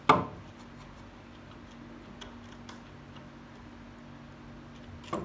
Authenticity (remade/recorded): recorded